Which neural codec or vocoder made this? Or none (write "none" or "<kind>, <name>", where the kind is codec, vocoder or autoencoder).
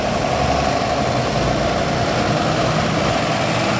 none